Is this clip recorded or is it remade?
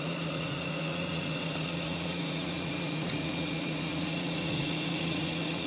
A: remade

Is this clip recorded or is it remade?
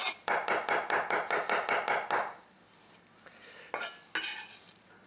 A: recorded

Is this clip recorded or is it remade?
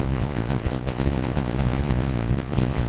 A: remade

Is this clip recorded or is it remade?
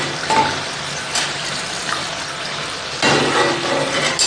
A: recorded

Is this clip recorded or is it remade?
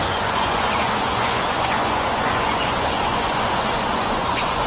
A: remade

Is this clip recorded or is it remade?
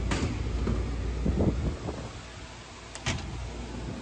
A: recorded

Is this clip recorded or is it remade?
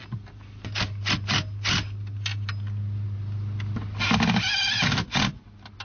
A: recorded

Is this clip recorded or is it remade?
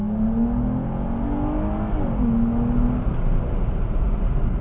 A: recorded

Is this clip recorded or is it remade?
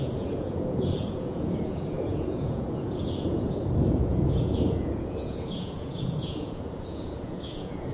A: remade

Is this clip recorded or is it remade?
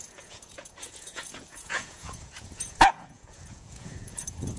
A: remade